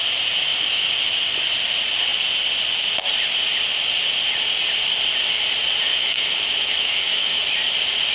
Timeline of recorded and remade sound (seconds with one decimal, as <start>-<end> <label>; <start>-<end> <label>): 0.0-0.5 recorded; 0.5-1.4 remade; 1.4-5.9 recorded; 5.9-7.3 remade; 7.3-8.1 recorded